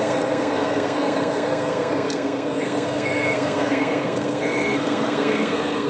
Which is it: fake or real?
fake